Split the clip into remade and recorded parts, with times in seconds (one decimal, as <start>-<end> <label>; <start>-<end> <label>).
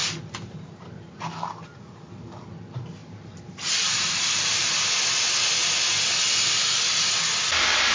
0.0-2.0 remade; 2.0-3.0 recorded; 3.0-4.7 remade; 4.7-7.9 recorded